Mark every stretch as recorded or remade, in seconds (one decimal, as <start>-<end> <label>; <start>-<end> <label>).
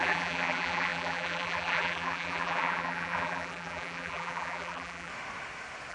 0.0-5.1 remade; 5.1-5.9 recorded